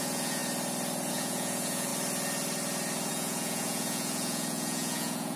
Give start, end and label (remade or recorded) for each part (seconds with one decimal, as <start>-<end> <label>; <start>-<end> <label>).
0.0-0.4 remade; 0.4-1.1 recorded; 1.1-1.9 remade; 1.9-3.1 recorded; 3.1-5.4 remade